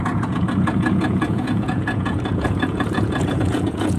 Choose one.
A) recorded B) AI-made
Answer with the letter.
B